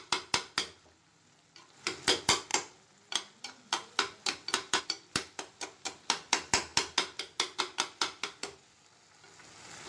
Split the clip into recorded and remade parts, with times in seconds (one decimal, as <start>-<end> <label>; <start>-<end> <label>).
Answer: 0.0-9.9 recorded